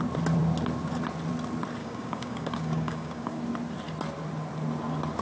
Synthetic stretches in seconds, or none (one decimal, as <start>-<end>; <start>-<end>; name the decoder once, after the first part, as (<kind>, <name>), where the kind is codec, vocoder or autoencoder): 1.8-3.4 (codec, DAC)